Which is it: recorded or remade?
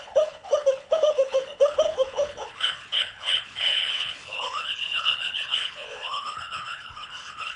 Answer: remade